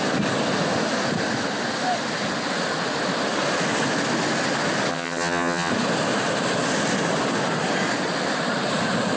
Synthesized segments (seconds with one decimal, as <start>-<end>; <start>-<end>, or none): 4.9-5.7